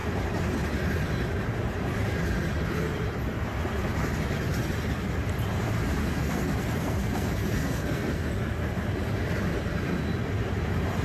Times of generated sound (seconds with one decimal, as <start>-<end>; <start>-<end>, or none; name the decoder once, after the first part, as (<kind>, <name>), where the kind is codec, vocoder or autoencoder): 6.0-8.3 (codec, SNAC)